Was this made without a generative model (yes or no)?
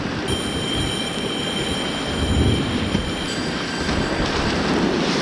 yes